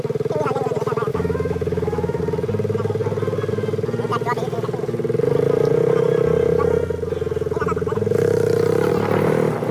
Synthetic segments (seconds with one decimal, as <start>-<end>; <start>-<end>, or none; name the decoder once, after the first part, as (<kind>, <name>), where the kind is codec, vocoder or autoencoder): 1.1-2.2 (autoencoder, DAC-VAE)